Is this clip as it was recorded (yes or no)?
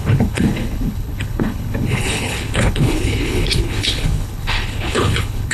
no